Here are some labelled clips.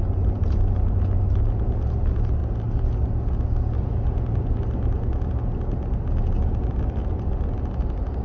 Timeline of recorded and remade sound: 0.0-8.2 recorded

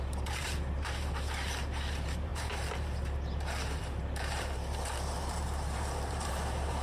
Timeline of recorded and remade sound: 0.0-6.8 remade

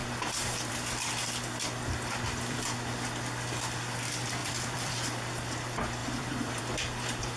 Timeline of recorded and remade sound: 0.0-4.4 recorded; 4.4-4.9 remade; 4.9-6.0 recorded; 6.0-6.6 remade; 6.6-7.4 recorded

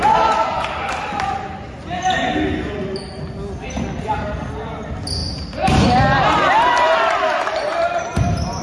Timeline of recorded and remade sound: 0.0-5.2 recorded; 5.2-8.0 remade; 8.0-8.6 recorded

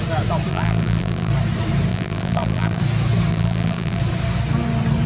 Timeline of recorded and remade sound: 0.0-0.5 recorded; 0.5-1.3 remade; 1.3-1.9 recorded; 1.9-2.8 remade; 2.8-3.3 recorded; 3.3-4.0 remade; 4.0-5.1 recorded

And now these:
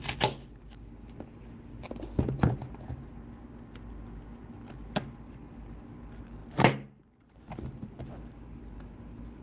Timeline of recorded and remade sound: 0.0-0.4 recorded; 0.4-1.2 remade; 1.2-5.4 recorded; 5.4-6.0 remade; 6.0-9.4 recorded

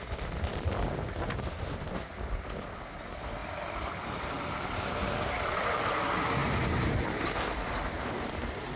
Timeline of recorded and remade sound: 0.0-3.4 recorded; 3.4-5.8 remade; 5.8-8.8 recorded